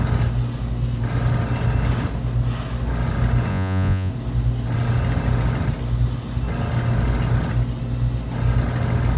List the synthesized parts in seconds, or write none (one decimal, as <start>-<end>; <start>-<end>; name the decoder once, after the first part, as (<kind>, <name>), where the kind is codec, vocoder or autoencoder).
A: 3.5-4.1 (vocoder, Vocos)